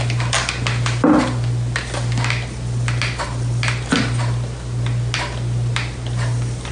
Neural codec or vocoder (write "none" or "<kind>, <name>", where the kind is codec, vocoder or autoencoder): none